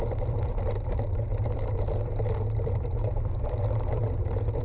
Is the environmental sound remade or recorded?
remade